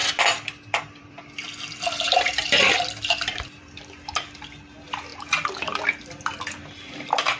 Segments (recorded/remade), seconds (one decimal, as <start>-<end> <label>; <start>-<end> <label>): 0.0-4.4 remade; 4.4-5.1 recorded; 5.1-6.0 remade; 6.0-7.4 recorded